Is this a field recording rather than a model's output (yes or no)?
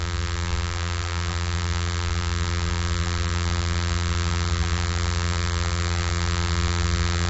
no